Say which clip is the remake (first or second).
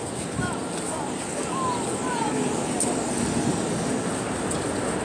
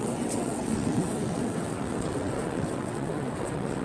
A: second